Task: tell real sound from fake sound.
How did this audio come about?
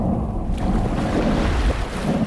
real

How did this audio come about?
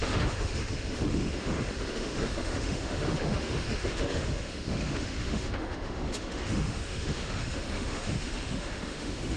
fake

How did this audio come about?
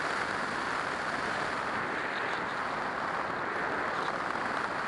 real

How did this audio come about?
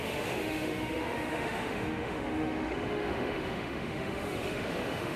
fake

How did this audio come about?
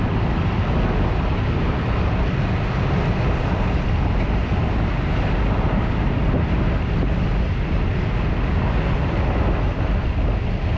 real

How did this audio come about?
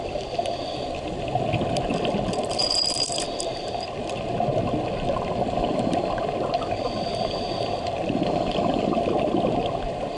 real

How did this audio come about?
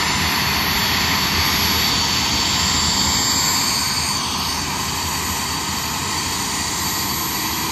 real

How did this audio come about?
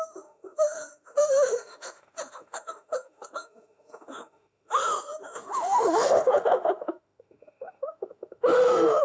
fake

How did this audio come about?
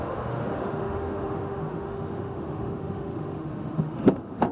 fake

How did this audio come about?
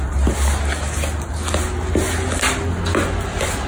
real